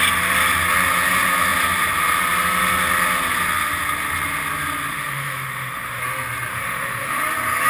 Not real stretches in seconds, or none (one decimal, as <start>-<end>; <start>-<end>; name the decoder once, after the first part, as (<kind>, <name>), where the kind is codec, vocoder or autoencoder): 4.9-6.0 (autoencoder, DAC-VAE); 6.5-7.2